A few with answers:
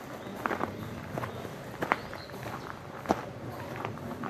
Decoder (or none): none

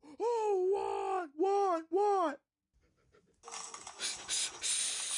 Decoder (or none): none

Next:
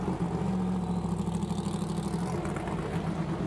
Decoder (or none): none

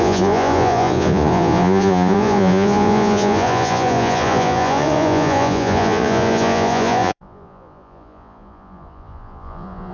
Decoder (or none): vocoder, Vocos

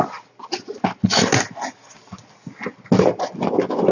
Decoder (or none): none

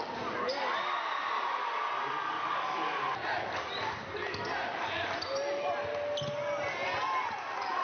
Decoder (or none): none